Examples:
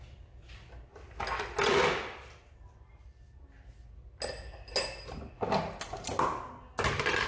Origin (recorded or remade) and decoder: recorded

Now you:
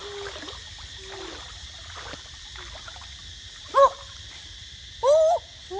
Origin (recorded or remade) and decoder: recorded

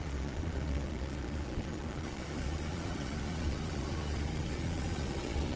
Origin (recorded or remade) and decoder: remade, vocoder, Vocos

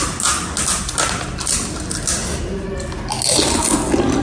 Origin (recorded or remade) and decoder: recorded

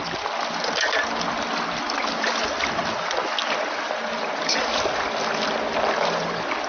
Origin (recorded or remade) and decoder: recorded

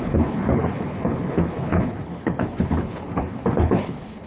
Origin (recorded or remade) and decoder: remade, codec, HILCodec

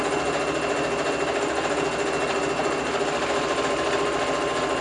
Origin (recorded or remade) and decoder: recorded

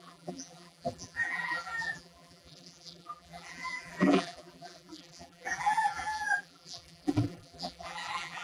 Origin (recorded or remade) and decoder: remade, vocoder, BigVGAN v2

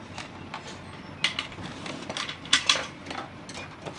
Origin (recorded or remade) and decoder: recorded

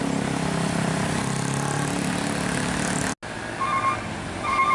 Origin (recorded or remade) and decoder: recorded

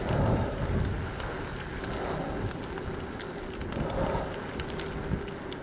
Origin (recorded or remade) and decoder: recorded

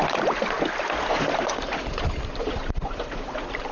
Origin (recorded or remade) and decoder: recorded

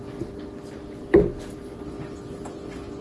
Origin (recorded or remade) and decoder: recorded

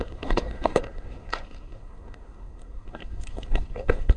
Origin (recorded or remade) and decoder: remade, codec, SNAC